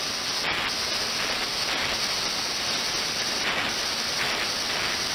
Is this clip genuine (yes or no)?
yes